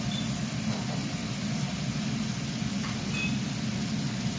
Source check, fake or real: fake